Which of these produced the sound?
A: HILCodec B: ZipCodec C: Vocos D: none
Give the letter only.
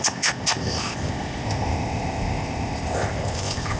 B